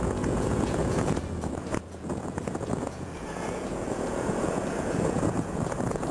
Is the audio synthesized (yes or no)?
yes